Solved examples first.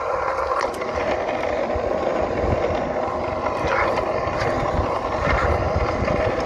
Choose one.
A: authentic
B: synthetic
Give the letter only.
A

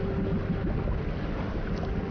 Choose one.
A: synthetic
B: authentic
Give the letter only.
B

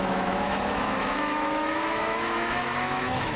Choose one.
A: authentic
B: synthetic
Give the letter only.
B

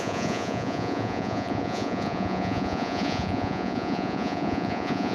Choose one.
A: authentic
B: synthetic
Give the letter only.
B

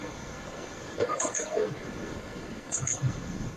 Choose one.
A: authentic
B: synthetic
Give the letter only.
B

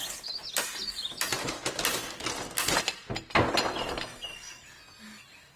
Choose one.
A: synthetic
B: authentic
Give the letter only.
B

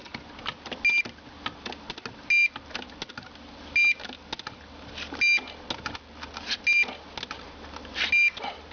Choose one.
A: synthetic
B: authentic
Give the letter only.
B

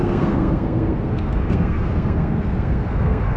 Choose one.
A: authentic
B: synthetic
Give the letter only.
B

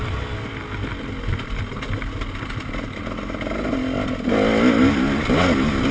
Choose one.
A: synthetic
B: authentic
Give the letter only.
B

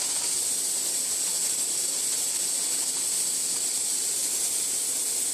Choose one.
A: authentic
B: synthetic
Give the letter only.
A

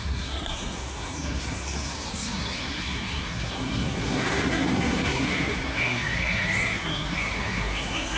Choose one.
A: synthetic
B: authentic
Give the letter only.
A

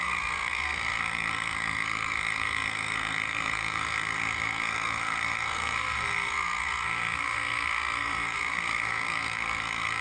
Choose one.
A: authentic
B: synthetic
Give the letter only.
B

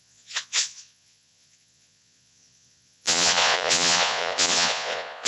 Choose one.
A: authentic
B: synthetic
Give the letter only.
B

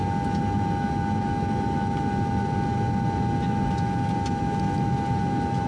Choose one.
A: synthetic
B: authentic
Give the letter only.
B